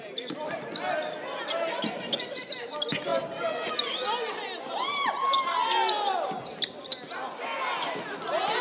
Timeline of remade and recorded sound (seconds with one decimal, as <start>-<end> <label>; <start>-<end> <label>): 0.0-8.6 recorded